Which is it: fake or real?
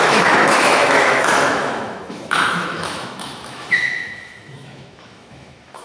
fake